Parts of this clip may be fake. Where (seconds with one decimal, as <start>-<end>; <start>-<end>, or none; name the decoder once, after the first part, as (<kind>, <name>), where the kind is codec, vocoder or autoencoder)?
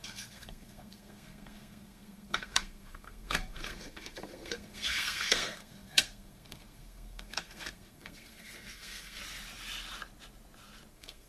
0.0-9.2 (codec, SNAC); 10.9-11.3